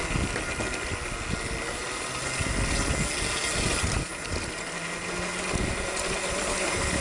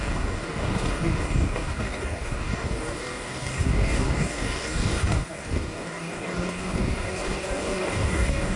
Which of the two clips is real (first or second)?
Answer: first